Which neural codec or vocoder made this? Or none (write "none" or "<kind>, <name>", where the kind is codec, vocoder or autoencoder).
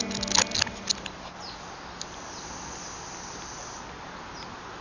none